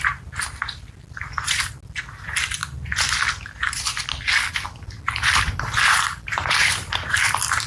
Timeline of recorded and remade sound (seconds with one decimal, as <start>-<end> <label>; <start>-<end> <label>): 0.0-7.7 recorded